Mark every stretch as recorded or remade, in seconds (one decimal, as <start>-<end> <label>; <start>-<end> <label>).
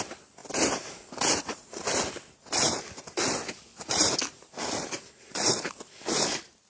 0.0-0.4 recorded; 0.4-1.8 remade; 1.8-6.7 recorded